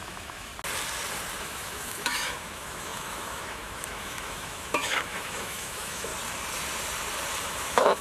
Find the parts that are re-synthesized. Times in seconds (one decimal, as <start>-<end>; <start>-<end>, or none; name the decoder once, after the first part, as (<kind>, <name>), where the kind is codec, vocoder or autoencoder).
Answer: 0.0-0.5 (autoencoder, DAC-VAE); 1.4-6.1; 7.4-8.0